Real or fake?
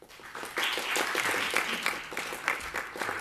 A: real